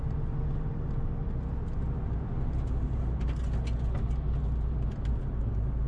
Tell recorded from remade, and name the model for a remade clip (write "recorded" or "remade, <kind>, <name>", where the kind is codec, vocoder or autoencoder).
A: recorded